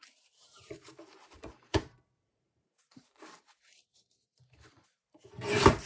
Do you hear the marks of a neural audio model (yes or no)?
yes